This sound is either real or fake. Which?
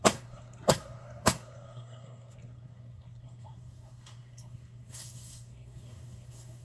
fake